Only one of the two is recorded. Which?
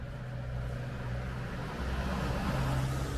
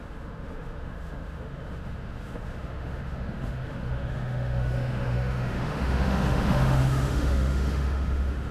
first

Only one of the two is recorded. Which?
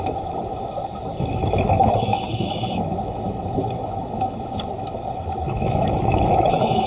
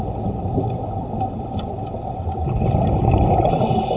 second